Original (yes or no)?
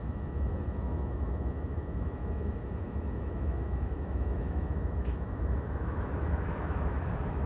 no